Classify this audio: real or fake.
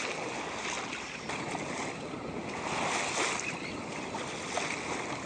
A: real